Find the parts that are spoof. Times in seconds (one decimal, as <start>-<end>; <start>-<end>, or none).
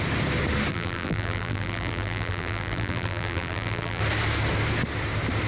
0.7-4.0